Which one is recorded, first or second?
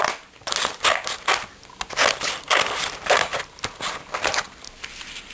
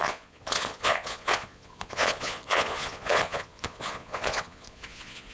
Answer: first